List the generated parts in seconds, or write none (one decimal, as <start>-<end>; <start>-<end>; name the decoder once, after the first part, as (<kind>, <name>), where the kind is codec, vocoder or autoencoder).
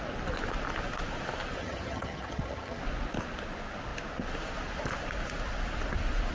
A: 1.6-2.8 (vocoder, HiFi-GAN)